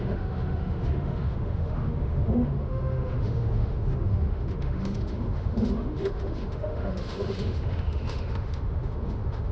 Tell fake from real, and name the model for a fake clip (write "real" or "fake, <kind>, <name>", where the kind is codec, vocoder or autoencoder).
fake, autoencoder, DAC-VAE